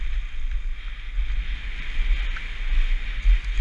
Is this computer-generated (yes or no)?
no